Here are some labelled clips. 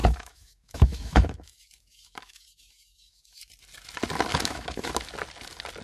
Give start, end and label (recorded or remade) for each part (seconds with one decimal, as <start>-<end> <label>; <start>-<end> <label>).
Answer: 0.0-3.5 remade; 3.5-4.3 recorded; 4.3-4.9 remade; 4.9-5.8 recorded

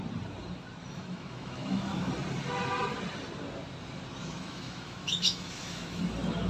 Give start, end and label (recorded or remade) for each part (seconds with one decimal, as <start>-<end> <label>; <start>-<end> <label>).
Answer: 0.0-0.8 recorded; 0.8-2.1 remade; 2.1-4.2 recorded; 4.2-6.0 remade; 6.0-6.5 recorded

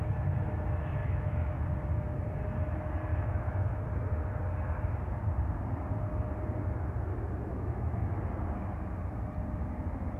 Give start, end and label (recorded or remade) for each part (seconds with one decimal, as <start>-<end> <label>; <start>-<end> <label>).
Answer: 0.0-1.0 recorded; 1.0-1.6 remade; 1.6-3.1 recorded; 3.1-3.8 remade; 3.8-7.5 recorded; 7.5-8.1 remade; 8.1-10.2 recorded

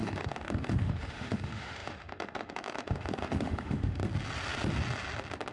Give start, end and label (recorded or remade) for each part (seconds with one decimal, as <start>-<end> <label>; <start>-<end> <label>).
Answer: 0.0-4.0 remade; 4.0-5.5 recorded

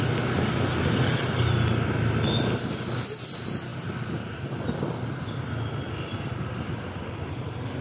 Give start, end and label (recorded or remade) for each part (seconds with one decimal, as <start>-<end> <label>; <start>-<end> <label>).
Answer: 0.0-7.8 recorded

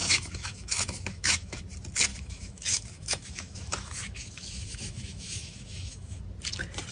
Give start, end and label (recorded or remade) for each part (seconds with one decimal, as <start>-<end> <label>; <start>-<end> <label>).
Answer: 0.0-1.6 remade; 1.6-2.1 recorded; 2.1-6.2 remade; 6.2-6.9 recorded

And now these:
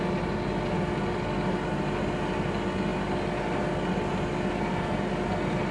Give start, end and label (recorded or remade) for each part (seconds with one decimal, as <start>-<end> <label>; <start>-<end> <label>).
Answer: 0.0-5.7 recorded